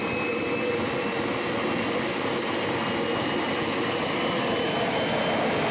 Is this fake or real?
real